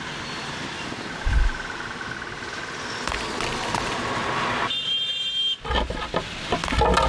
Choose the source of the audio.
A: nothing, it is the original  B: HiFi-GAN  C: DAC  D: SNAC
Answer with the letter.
A